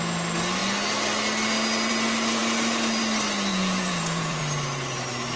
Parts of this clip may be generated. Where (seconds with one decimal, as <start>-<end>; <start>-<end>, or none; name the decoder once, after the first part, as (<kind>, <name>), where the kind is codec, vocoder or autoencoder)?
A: 3.5-4.4 (vocoder, Vocos)

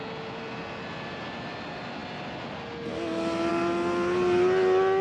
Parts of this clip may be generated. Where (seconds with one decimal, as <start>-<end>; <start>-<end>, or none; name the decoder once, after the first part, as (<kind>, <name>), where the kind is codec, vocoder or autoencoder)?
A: none

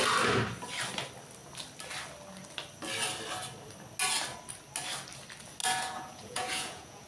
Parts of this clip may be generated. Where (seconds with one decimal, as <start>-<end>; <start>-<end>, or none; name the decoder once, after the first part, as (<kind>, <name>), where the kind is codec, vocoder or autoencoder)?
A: 5.6-7.1 (vocoder, Vocos)